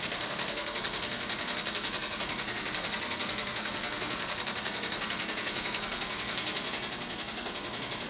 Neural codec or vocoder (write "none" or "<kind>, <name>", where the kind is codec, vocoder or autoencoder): codec, SNAC